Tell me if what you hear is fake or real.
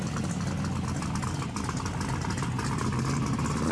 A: real